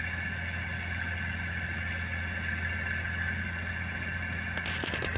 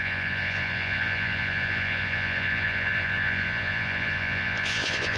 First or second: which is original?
first